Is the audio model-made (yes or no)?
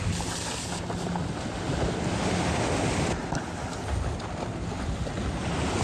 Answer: no